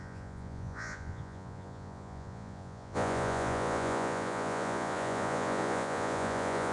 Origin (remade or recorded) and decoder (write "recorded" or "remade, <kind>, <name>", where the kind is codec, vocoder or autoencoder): remade, vocoder, Vocos